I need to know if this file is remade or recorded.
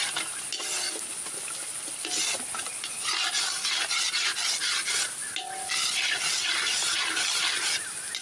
recorded